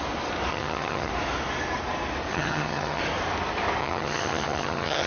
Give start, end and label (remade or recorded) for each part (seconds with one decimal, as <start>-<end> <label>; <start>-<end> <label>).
0.0-0.5 recorded; 0.5-1.1 remade; 1.1-2.3 recorded; 2.3-3.0 remade; 3.0-3.8 recorded; 3.8-5.1 remade